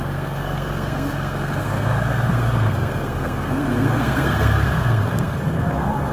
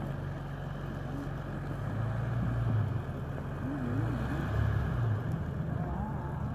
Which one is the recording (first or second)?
second